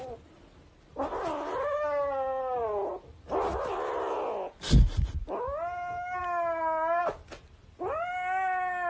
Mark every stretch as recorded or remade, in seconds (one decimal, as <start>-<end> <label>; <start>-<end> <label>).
0.0-8.9 recorded